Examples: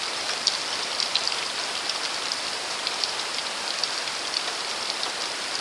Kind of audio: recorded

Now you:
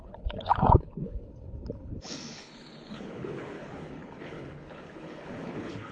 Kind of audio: remade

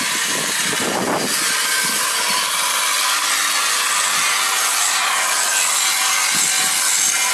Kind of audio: recorded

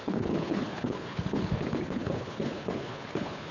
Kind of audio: remade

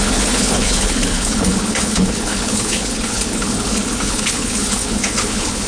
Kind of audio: remade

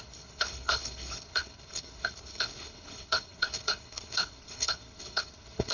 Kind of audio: remade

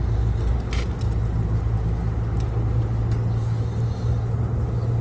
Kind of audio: recorded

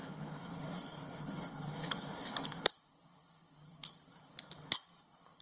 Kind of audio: remade